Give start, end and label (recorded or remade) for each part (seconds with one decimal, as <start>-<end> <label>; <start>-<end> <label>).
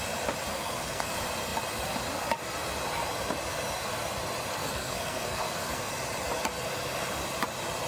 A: 0.0-0.5 recorded; 0.5-1.1 remade; 1.1-4.6 recorded; 4.6-5.9 remade; 5.9-7.9 recorded